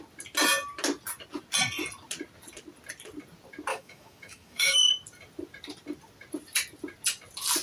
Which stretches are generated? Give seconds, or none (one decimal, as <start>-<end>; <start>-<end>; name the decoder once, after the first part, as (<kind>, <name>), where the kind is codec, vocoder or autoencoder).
3.7-4.9 (autoencoder, DAC-VAE)